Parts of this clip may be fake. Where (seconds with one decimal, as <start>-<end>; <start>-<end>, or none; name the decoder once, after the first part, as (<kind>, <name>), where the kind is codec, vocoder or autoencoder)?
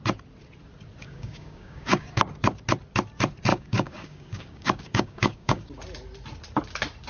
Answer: 1.0-2.2 (codec, DAC); 3.5-5.7